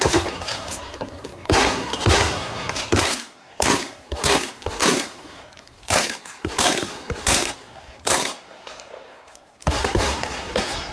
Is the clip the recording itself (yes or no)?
no